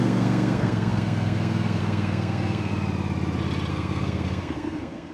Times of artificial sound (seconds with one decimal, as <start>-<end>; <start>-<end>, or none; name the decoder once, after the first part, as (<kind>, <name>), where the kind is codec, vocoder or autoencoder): 0.0-2.7 (codec, SNAC); 3.7-5.1